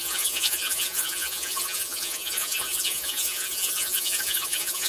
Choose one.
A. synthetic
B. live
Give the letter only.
A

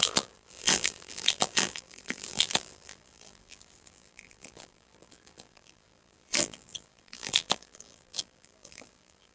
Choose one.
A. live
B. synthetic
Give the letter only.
B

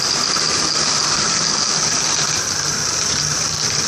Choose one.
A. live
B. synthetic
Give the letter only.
A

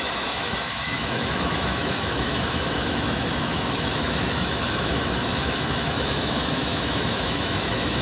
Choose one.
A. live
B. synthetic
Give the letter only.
B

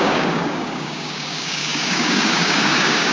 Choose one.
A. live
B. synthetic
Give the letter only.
B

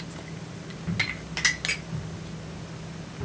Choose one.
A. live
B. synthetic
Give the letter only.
A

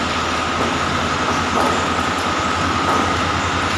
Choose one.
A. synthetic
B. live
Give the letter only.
B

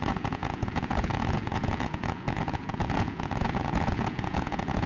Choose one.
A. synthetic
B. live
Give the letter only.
A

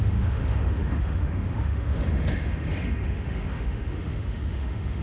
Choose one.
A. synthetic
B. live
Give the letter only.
A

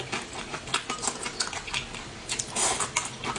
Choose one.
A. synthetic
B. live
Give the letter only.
B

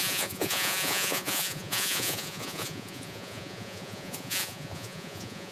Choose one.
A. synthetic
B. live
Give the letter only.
A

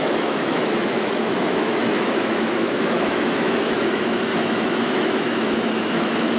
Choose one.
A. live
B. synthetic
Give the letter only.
B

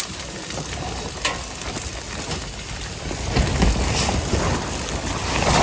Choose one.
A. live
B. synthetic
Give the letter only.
A